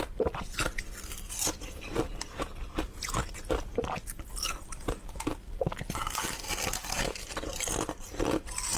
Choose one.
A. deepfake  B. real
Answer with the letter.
B